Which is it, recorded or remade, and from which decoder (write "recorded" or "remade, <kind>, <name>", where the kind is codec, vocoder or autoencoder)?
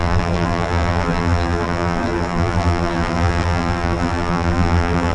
remade, vocoder, BigVGAN v2